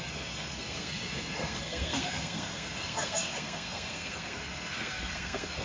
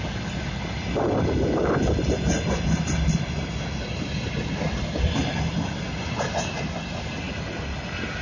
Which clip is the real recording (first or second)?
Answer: second